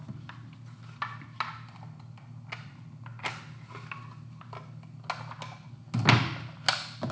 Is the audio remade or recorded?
recorded